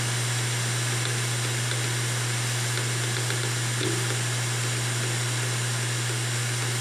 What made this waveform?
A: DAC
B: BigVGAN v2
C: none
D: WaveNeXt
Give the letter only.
C